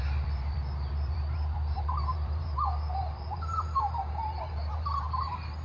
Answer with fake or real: fake